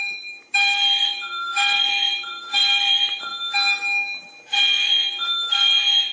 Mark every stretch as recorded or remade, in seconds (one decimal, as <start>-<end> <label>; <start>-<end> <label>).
0.0-3.3 remade; 3.3-4.5 recorded; 4.5-6.1 remade